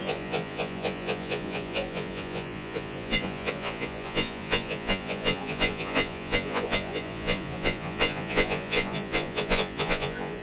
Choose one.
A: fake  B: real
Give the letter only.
A